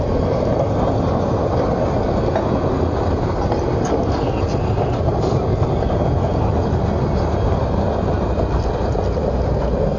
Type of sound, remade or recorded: recorded